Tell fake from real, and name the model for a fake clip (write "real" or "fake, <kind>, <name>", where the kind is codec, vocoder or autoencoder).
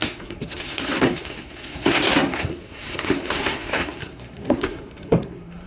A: fake, codec, SNAC